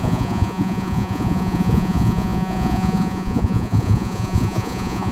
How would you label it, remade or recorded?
remade